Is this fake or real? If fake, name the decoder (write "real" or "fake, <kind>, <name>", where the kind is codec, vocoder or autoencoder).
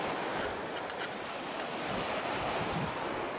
real